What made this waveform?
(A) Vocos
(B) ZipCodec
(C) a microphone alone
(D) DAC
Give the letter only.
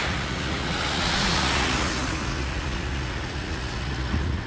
A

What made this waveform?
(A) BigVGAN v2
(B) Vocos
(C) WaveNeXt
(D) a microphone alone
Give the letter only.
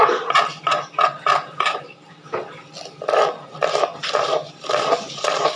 A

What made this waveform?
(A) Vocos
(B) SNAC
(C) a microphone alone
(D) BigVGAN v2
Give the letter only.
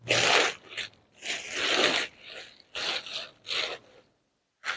C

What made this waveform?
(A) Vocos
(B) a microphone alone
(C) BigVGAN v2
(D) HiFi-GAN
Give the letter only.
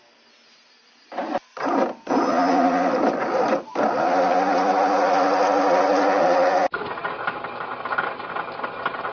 B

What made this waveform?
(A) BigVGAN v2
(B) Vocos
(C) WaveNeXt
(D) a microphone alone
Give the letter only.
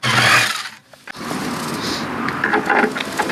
D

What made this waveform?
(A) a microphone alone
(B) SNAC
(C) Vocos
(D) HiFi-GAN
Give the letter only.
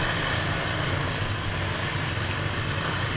A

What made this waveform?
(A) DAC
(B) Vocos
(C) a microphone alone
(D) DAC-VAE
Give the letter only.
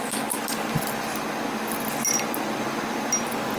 C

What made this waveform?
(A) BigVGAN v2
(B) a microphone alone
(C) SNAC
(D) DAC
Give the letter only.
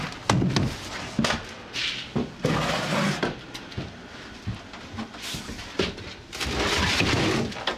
B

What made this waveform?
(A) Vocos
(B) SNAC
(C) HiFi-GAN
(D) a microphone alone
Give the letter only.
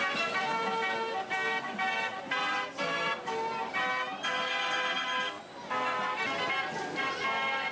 D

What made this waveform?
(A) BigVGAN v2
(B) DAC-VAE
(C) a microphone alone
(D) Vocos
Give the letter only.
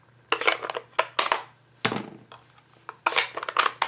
C